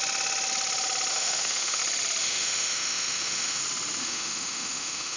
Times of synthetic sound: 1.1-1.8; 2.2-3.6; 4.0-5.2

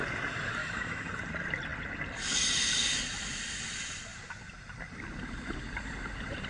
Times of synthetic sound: 0.6-1.1

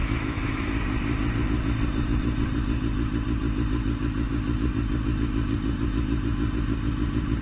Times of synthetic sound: 0.0-0.7

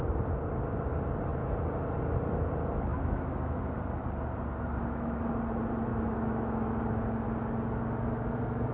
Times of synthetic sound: 2.9-3.6; 4.8-5.3; 5.9-6.8